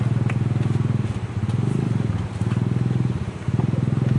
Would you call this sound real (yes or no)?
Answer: yes